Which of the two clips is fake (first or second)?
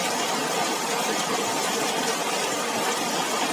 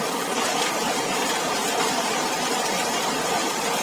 second